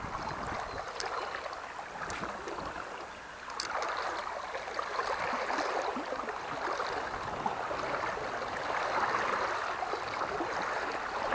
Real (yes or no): yes